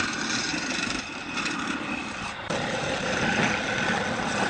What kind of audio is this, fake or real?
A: real